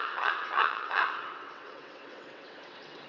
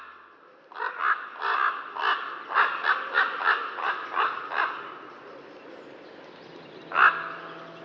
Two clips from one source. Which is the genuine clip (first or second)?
second